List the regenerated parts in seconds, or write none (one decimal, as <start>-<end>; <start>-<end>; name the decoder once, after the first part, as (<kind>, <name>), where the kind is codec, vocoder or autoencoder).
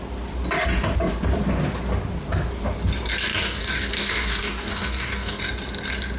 3.3-5.4 (codec, DAC)